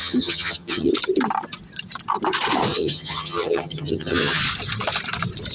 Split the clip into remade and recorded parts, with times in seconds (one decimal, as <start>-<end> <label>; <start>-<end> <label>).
0.0-0.9 remade; 0.9-2.7 recorded; 2.7-4.4 remade; 4.4-5.5 recorded